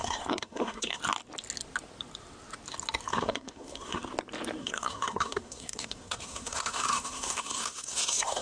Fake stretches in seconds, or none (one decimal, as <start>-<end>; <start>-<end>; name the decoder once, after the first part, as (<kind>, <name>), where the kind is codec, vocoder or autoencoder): 0.0-1.0 (codec, SNAC); 3.1-4.0; 4.6-8.4

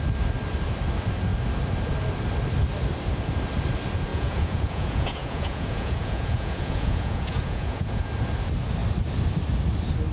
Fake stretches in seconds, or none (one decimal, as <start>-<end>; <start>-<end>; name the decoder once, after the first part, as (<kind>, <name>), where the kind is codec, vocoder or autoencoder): 4.1-8.1 (vocoder, Vocos)

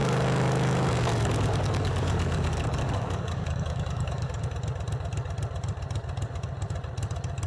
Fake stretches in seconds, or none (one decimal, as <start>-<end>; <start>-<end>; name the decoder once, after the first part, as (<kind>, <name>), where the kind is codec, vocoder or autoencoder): 0.0-4.4 (codec, DAC)

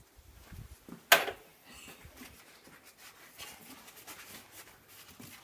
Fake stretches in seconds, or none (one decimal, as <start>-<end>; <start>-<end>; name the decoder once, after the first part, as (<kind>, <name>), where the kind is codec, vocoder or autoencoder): 1.5-2.4 (vocoder, BigVGAN v2)

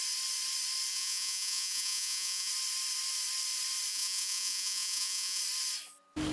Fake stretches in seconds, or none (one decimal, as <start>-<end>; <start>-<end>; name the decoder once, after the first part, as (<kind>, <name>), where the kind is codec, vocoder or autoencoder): 0.9-2.5 (vocoder, Vocos); 3.9-5.4

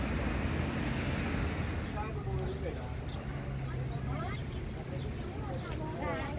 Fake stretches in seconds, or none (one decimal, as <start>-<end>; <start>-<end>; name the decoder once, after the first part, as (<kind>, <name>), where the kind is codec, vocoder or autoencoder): none

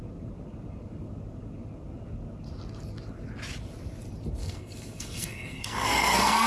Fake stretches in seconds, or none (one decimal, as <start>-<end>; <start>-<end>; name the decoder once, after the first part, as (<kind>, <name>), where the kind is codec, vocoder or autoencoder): 4.4-6.5 (codec, SNAC)